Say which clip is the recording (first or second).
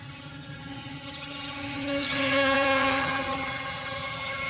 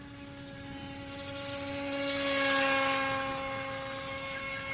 second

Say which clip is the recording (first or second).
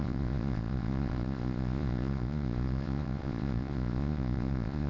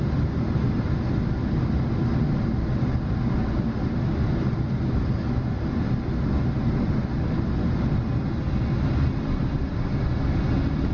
second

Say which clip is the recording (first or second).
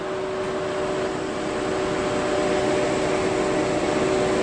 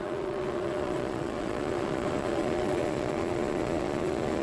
first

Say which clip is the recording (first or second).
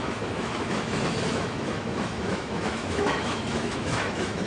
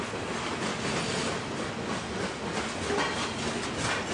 second